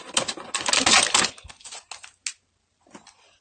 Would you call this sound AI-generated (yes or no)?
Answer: no